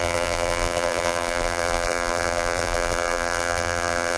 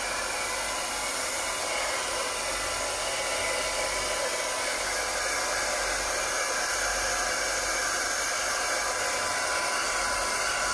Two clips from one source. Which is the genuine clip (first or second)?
second